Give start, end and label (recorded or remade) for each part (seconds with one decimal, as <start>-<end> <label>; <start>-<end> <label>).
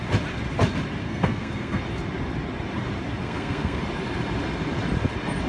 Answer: 0.0-1.0 recorded; 1.0-1.8 remade; 1.8-3.2 recorded; 3.2-3.8 remade; 3.8-5.5 recorded